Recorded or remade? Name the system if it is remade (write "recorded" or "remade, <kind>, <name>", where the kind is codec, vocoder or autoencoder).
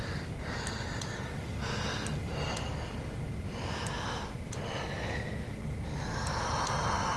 recorded